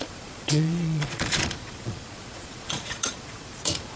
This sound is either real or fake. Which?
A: fake